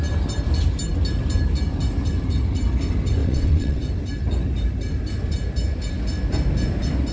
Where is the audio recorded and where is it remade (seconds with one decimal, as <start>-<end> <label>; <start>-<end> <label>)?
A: 0.0-3.2 recorded; 3.2-3.8 remade; 3.8-7.1 recorded